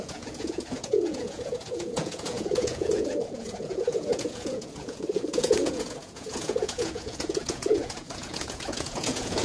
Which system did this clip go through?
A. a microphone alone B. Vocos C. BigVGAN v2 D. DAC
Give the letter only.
B